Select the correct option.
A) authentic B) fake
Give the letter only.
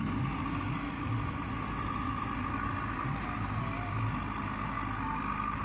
A